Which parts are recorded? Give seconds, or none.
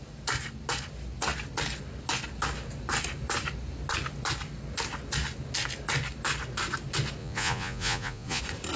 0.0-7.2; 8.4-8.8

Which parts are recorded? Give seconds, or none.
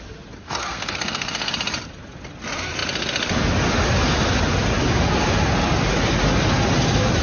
0.0-0.4; 1.5-7.2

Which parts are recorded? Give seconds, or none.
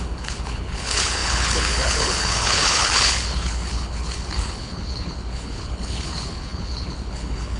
none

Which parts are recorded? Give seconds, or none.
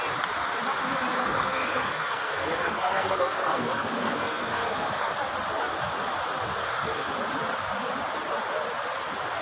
0.0-1.2; 5.1-6.6; 7.1-9.4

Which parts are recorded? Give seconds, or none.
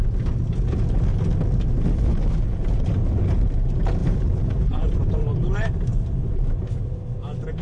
0.0-4.0; 6.3-7.6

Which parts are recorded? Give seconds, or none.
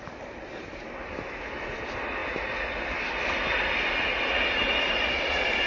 0.0-5.7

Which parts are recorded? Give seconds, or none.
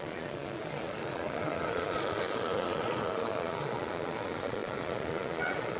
none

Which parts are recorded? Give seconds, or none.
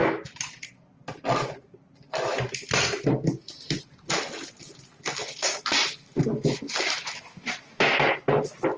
0.0-8.8